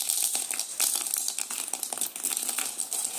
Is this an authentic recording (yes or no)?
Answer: yes